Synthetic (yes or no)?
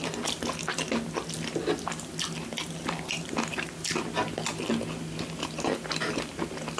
no